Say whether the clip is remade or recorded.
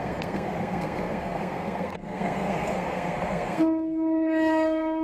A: remade